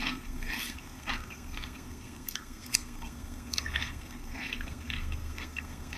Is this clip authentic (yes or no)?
no